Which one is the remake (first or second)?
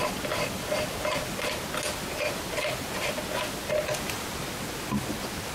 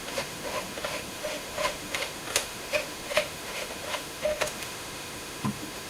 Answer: second